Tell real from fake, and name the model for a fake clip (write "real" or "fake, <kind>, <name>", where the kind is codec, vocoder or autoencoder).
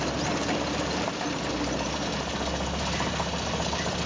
real